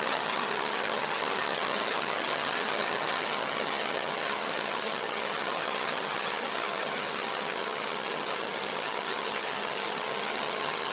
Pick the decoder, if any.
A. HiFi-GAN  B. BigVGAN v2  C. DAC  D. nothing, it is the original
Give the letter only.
A